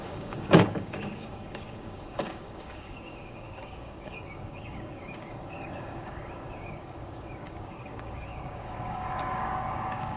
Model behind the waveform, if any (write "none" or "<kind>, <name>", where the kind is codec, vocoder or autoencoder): codec, DAC